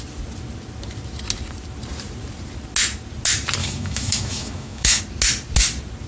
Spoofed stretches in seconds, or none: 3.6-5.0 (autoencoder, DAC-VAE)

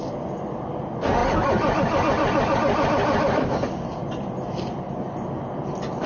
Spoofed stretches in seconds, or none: none

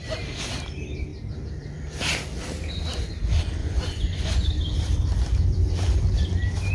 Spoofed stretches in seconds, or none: 3.6-4.6 (vocoder, Vocos)

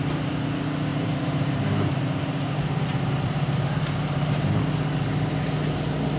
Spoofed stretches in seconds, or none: 0.9-4.6 (vocoder, BigVGAN v2)